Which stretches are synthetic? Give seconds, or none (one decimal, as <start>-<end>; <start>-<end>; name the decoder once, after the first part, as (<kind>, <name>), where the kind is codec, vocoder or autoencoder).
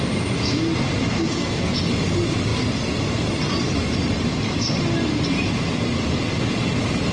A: 1.0-1.7 (codec, SNAC)